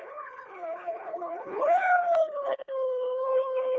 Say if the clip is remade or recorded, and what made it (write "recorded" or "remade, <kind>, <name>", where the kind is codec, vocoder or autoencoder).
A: remade, codec, HILCodec